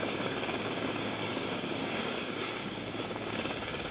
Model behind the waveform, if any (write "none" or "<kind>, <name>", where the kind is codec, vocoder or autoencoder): codec, DAC